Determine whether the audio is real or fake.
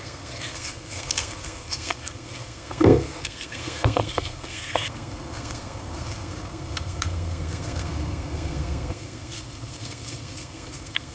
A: fake